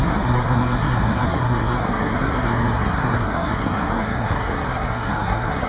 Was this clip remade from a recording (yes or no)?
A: yes